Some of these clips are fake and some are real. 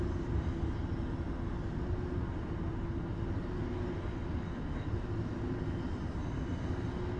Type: real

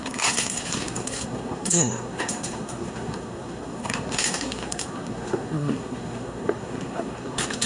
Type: fake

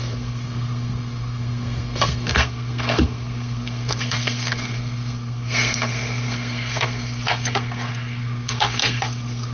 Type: fake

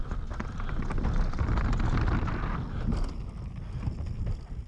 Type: real